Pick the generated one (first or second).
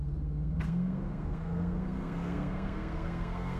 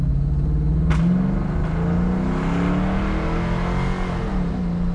first